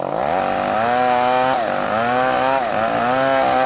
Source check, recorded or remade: recorded